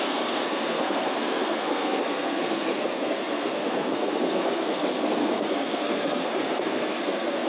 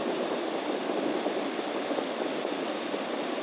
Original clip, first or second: second